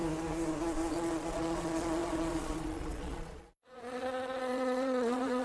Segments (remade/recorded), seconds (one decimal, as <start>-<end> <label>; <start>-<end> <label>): 0.0-0.9 recorded; 0.9-5.4 remade